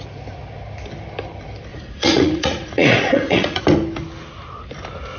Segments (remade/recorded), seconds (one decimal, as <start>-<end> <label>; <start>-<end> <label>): 0.0-1.7 recorded; 1.7-3.6 remade; 3.6-5.2 recorded